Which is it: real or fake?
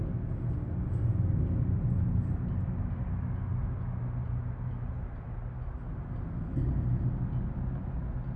real